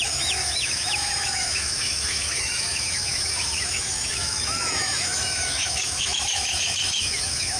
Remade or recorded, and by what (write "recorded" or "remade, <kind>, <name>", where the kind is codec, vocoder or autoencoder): remade, autoencoder, DAC-VAE